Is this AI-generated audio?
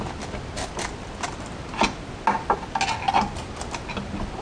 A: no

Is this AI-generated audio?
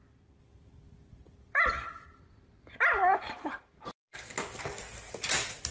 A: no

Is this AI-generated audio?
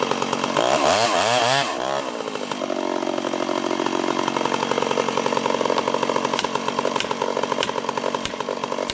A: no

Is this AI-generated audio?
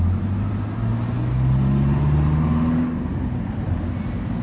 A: no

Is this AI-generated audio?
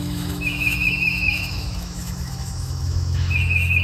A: yes